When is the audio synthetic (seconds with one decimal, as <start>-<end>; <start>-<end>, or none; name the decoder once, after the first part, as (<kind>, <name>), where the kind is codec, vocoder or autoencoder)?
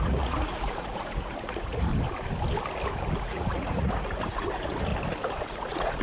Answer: 0.0-1.9 (vocoder, Vocos); 3.2-4.9; 5.4-6.0